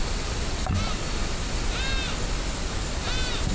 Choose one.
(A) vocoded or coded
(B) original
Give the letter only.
B